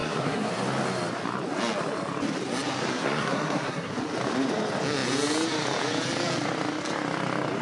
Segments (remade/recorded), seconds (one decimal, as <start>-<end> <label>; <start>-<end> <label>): 0.0-0.5 remade; 0.5-2.9 recorded; 2.9-3.9 remade; 3.9-7.6 recorded